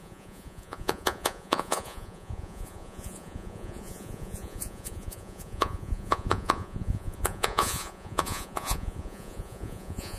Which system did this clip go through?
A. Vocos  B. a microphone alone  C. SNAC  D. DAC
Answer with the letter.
A